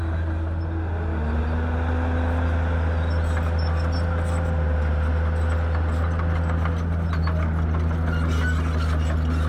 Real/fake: real